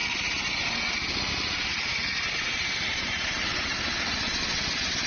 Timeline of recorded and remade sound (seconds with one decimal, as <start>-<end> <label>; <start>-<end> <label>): 0.0-2.9 recorded; 2.9-4.4 remade; 4.4-5.1 recorded